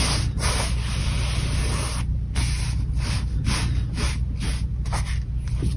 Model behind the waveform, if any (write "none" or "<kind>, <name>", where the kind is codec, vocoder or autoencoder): none